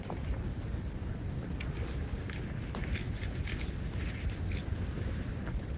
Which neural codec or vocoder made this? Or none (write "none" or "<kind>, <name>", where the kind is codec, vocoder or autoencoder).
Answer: none